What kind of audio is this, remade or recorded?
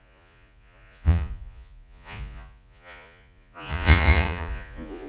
remade